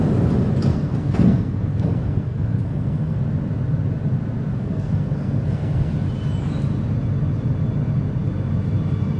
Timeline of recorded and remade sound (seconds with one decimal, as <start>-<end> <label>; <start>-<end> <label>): 0.0-0.7 recorded; 0.7-3.2 remade; 3.2-4.5 recorded; 4.5-5.9 remade; 5.9-9.2 recorded